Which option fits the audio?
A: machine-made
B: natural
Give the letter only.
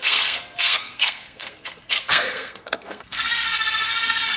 A